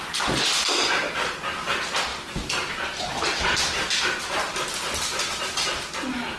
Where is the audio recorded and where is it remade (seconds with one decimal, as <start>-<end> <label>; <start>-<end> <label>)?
0.0-2.1 recorded; 2.1-4.5 remade; 4.5-6.4 recorded